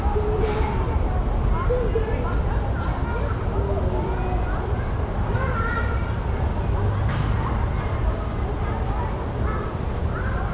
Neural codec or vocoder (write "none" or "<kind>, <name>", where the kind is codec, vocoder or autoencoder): none